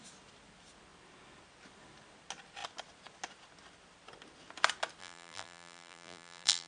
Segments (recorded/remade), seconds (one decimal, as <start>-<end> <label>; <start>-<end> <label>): 0.0-5.0 recorded; 5.0-6.7 remade

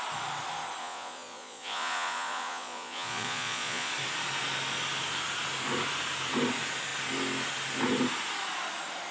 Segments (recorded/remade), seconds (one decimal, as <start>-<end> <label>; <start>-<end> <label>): 0.0-0.8 recorded; 0.8-3.9 remade; 3.9-9.1 recorded

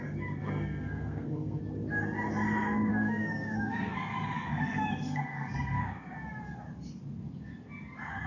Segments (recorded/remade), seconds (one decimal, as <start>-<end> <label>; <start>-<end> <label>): 0.0-0.4 recorded; 0.4-1.6 remade; 1.6-2.9 recorded; 2.9-5.8 remade; 5.8-8.3 recorded

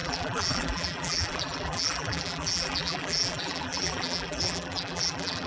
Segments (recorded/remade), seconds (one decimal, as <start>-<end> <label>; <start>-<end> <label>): 0.0-5.5 remade

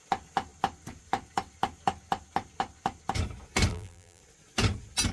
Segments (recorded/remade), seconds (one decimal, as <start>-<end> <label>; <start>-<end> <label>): 0.0-3.7 recorded; 3.7-4.2 remade; 4.2-5.1 recorded

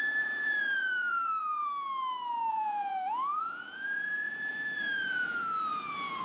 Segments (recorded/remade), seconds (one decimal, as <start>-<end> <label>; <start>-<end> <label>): 0.0-1.7 remade; 1.7-2.5 recorded; 2.5-6.2 remade

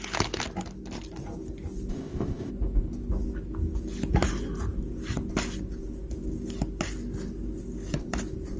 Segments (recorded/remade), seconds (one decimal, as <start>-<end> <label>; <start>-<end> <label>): 0.0-1.9 recorded; 1.9-2.5 remade; 2.5-8.6 recorded